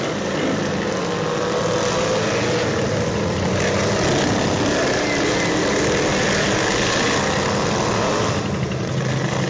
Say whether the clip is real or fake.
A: real